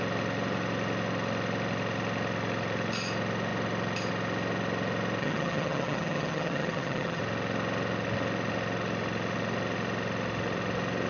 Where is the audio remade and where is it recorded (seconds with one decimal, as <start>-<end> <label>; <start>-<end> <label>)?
0.0-5.2 recorded; 5.2-7.2 remade; 7.2-11.1 recorded